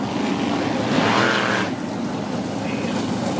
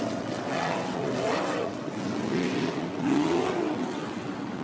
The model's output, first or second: second